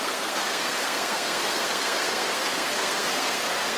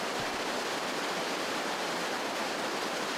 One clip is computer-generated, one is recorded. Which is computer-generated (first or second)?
first